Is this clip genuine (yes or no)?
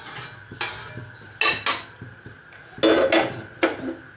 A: yes